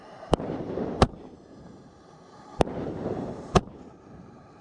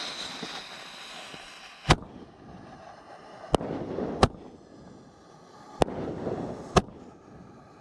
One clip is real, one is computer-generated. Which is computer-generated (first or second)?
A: first